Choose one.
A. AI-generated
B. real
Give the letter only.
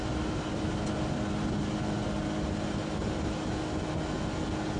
B